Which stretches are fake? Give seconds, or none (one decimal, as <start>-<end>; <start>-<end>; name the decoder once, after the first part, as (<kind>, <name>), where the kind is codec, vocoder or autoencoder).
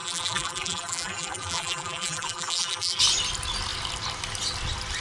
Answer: 0.0-3.0 (vocoder, BigVGAN v2)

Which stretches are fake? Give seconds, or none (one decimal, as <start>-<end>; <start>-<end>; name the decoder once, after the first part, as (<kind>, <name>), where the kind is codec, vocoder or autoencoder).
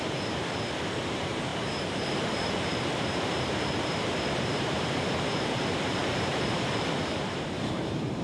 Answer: 0.0-8.2 (vocoder, BigVGAN v2)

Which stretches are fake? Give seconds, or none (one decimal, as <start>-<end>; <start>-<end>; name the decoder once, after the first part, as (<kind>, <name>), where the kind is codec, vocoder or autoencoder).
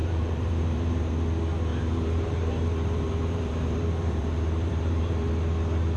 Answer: 0.0-1.1 (vocoder, BigVGAN v2); 1.7-5.3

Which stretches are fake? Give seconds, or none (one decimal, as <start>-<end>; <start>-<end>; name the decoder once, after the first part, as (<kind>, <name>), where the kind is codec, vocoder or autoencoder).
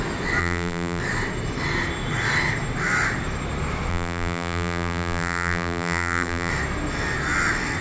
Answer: 0.4-1.0 (vocoder, BigVGAN v2); 3.9-6.5